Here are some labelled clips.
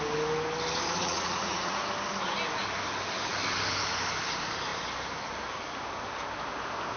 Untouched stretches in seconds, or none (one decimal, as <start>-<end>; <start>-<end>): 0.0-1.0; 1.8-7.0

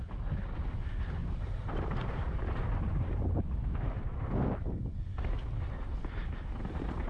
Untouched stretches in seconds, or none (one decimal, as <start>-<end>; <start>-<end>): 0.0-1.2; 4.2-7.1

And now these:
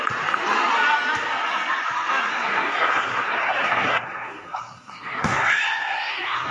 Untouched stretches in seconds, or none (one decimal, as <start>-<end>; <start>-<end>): 0.0-2.3

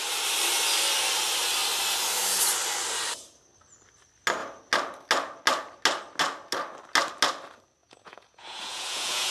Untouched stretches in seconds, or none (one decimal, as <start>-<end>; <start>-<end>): 0.0-7.8